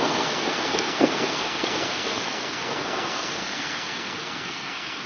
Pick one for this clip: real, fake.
fake